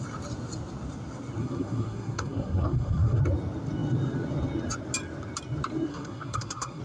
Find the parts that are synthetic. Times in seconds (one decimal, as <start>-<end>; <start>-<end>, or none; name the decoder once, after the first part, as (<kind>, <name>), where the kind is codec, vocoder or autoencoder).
1.4-3.2 (codec, SNAC); 5.9-6.8